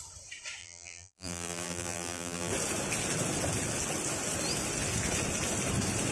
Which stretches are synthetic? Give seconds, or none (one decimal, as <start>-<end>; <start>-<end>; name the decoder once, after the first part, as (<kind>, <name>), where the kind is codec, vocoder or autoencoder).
0.6-2.5 (vocoder, BigVGAN v2)